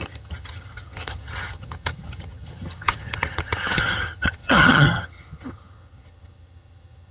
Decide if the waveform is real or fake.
fake